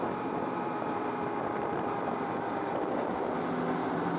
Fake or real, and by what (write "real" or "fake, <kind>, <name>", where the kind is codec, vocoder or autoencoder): real